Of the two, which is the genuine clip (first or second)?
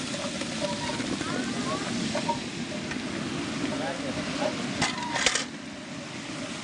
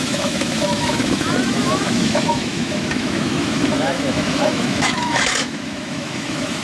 first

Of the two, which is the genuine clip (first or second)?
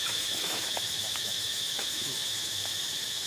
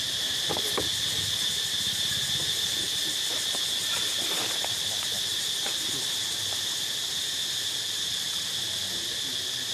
second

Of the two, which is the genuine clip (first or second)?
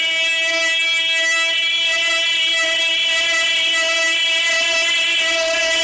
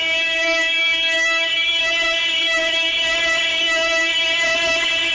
first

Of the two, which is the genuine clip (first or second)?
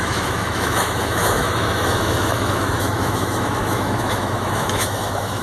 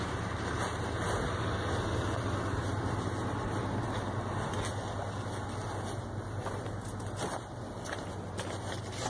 second